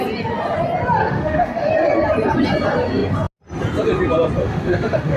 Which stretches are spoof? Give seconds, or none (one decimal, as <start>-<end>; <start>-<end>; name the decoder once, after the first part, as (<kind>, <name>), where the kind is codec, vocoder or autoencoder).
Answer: 1.0-1.7 (autoencoder, DAC-VAE); 4.4-5.2